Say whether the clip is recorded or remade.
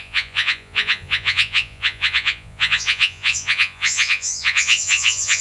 remade